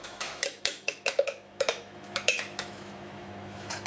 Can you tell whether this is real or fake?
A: fake